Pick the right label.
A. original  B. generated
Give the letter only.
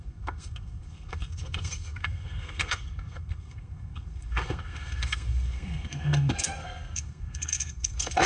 B